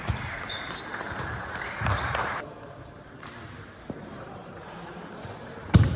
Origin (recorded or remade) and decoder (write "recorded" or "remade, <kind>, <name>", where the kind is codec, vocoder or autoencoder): remade, vocoder, BigVGAN v2